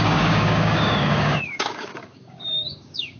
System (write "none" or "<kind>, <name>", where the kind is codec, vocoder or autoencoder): codec, DAC